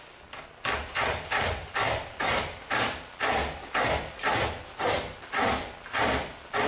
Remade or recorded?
recorded